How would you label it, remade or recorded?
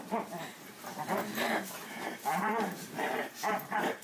remade